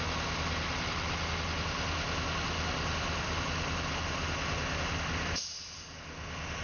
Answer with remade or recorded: recorded